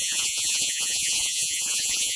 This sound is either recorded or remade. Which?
remade